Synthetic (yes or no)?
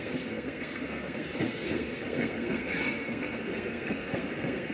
yes